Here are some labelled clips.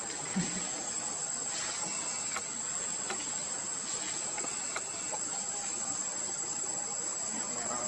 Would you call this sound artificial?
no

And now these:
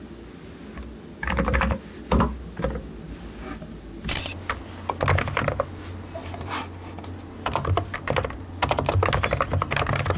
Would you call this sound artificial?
no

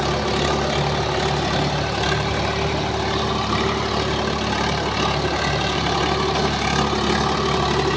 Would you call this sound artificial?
no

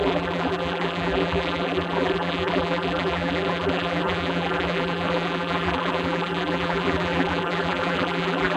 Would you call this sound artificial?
yes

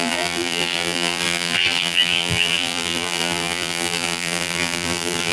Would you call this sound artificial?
yes